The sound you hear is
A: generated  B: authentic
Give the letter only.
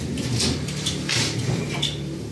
B